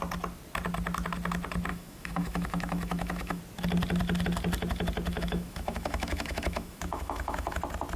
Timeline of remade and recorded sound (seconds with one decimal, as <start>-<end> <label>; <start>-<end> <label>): 0.0-1.7 recorded; 1.7-3.4 remade; 3.4-5.1 recorded; 5.1-7.6 remade; 7.6-8.0 recorded